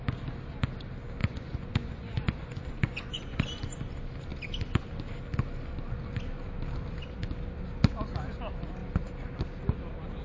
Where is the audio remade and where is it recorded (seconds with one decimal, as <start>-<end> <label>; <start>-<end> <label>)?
0.0-1.2 recorded; 1.2-3.4 remade; 3.4-10.2 recorded

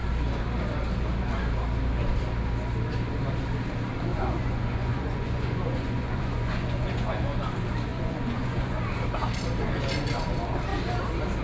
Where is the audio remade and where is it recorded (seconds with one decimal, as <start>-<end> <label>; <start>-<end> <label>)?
0.0-4.1 recorded; 4.1-7.5 remade; 7.5-7.9 recorded; 7.9-8.8 remade; 8.8-11.4 recorded

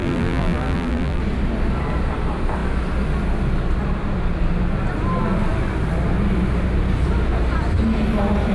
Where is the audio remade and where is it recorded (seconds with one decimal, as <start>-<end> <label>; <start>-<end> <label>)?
0.0-1.2 remade; 1.2-8.5 recorded

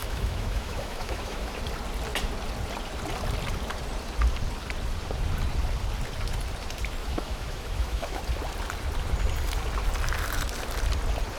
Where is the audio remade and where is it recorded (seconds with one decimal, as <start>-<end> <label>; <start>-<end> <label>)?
0.0-1.6 remade; 1.6-7.0 recorded; 7.0-8.2 remade; 8.2-11.4 recorded